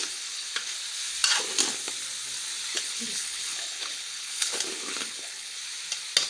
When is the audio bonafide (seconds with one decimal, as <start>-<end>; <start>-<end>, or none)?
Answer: 0.7-2.7; 5.6-6.3